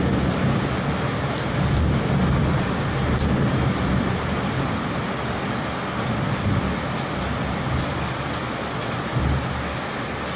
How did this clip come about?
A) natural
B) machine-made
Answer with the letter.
A